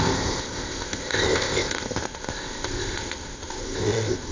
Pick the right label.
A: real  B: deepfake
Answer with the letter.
B